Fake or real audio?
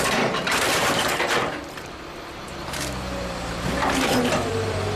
fake